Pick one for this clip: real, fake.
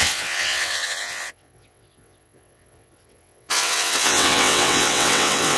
fake